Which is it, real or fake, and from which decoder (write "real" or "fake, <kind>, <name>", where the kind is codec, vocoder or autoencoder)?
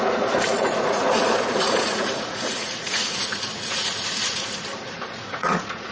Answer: fake, vocoder, Vocos